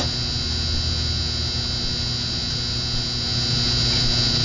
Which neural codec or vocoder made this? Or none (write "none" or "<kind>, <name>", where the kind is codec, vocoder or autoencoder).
none